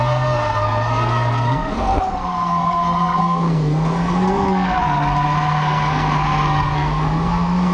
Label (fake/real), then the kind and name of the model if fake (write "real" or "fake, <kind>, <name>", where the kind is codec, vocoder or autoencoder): fake, codec, SNAC